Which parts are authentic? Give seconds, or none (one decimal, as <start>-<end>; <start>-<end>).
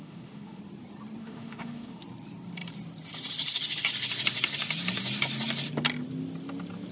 0.6-1.2; 2.0-6.9